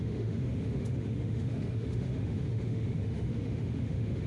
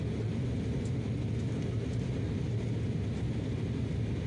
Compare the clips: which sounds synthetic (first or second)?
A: first